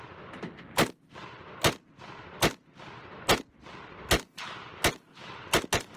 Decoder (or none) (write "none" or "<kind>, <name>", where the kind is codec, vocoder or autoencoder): none